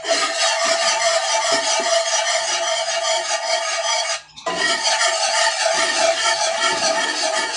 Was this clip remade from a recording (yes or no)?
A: no